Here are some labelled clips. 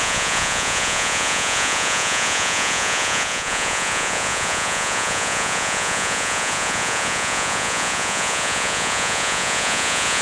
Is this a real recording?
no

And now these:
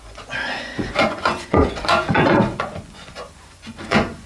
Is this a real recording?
no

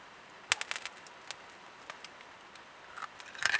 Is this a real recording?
yes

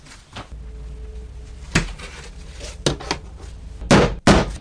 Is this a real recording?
yes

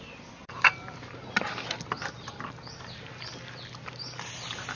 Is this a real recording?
yes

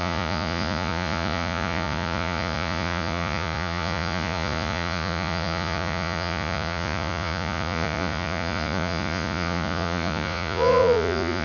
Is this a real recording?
no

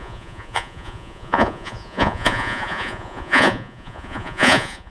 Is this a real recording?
no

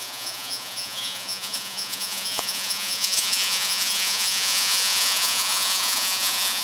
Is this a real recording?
no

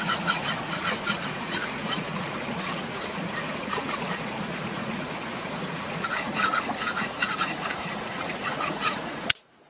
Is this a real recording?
no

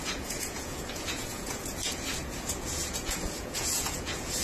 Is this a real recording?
no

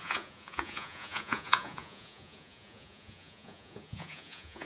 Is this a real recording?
no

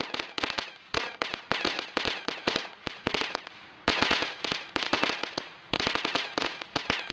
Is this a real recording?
no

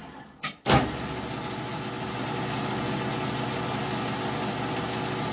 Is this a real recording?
yes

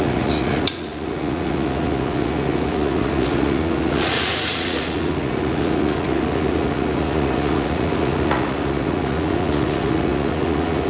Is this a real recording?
no